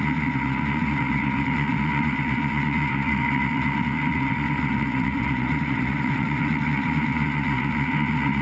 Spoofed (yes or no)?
yes